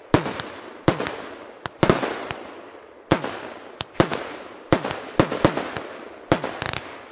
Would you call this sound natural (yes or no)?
yes